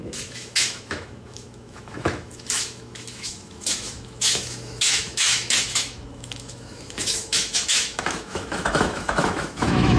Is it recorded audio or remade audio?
remade